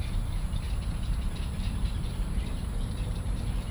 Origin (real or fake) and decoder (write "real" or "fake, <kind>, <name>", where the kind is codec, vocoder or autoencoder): fake, vocoder, BigVGAN v2